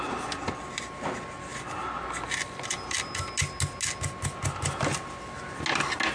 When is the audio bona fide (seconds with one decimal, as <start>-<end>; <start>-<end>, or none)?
0.0-6.1

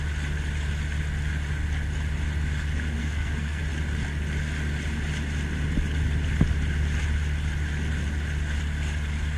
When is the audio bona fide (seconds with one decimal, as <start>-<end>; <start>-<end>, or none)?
0.0-3.0; 3.6-9.4

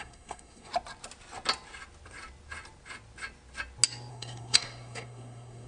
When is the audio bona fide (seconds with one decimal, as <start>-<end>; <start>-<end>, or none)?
0.7-4.1

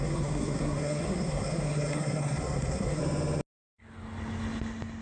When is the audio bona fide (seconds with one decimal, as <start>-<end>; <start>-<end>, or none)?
3.0-5.0

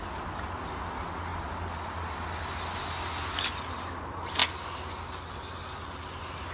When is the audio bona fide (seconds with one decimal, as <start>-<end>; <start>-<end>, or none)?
0.0-6.5

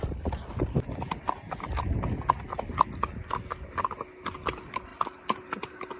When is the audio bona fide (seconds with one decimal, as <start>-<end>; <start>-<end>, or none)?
0.0-6.0